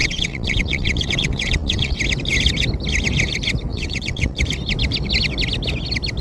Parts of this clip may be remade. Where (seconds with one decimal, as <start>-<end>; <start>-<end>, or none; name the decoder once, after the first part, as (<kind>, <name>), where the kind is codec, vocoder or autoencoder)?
0.0-2.0 (vocoder, WaveNeXt); 3.7-4.4